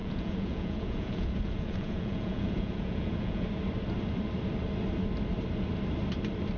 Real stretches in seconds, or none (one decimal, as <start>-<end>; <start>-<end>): 3.5-6.6